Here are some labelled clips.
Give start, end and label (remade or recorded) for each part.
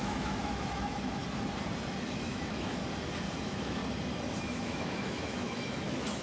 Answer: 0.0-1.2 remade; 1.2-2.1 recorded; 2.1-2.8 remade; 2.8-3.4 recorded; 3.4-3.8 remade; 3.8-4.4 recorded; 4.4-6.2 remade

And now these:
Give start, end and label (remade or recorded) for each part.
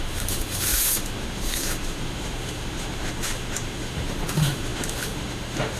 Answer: 0.0-5.8 remade